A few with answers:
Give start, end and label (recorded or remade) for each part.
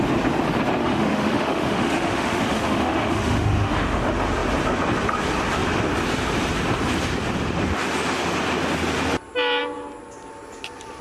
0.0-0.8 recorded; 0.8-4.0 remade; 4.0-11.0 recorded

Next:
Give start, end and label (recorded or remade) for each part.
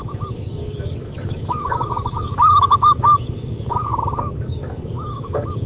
0.0-5.7 remade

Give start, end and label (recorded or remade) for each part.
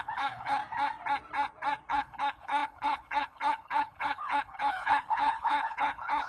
0.0-0.6 remade; 0.6-1.9 recorded; 1.9-6.3 remade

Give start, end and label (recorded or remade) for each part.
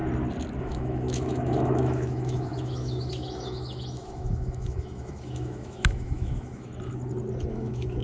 0.0-0.6 recorded; 0.6-6.7 remade; 6.7-7.5 recorded; 7.5-8.0 remade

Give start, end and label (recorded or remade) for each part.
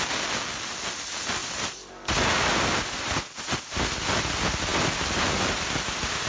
0.0-1.4 recorded; 1.4-1.9 remade; 1.9-6.3 recorded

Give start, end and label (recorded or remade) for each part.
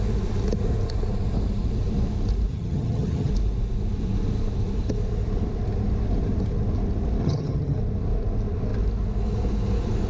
0.0-2.5 recorded; 2.5-3.3 remade; 3.3-7.2 recorded; 7.2-7.8 remade; 7.8-10.1 recorded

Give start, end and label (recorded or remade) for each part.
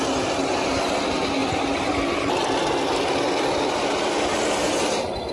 0.0-5.3 recorded